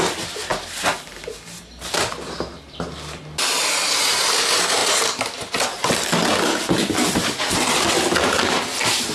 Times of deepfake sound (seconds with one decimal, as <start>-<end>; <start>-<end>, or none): none